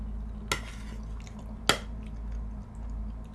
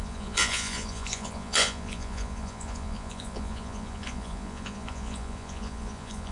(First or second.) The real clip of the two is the first